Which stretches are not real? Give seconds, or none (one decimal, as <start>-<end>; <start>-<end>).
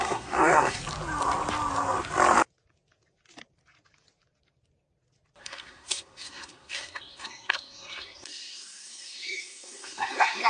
0.0-0.8; 5.4-10.5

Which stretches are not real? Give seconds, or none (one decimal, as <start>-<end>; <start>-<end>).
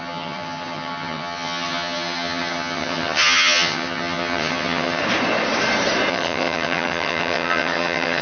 0.0-5.0; 6.1-8.2